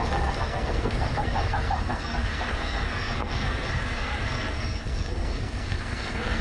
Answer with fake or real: fake